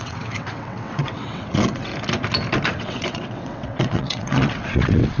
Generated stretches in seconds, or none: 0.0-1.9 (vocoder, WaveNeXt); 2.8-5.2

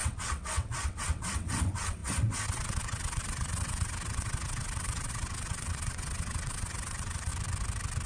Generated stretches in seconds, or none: 0.0-7.3 (vocoder, WaveNeXt)

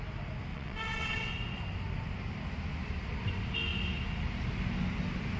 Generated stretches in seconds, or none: 0.5-1.3 (vocoder, WaveNeXt)

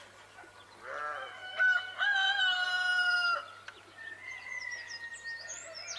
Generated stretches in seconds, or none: none

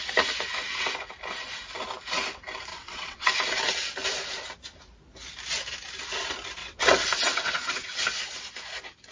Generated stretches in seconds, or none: 2.7-3.3 (vocoder, WaveNeXt); 6.6-8.0

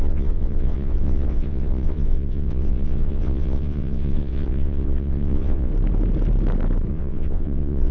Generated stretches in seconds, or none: 0.0-5.7 (vocoder, WaveNeXt); 6.9-7.9